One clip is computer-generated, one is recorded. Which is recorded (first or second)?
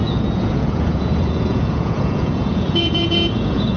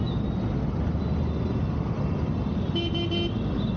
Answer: second